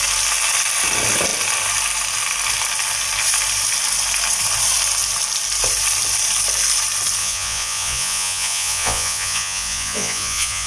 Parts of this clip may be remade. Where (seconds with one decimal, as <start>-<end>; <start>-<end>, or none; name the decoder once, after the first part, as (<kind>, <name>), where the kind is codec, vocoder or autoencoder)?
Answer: 7.2-10.7 (vocoder, Vocos)